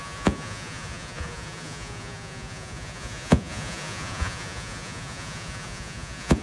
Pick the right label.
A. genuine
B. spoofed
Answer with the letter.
B